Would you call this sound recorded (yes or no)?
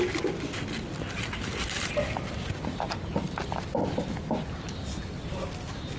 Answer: yes